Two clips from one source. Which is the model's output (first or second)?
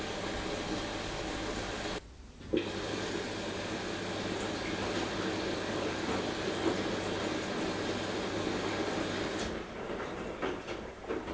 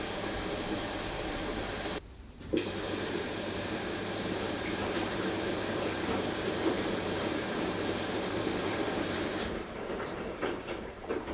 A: second